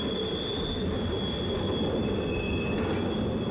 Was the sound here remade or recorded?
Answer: recorded